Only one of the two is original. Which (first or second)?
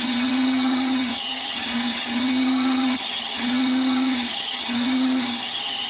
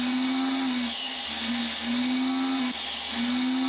second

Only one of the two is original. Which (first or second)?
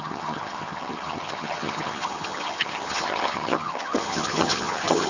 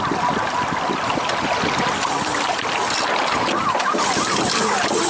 second